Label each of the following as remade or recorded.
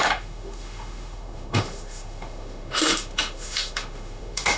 remade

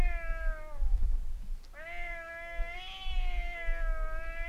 recorded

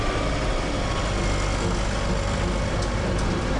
recorded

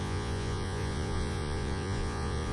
remade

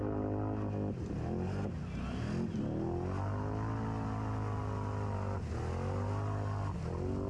recorded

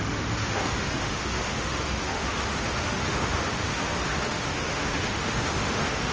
remade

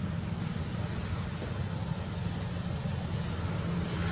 recorded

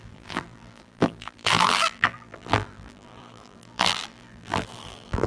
remade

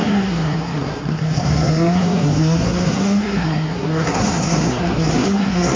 remade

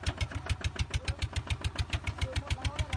recorded